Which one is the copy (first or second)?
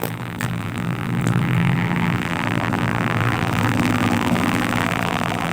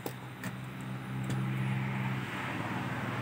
first